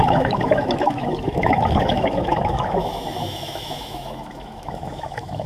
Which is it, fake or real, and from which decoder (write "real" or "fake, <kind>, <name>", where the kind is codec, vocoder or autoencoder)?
fake, autoencoder, DAC-VAE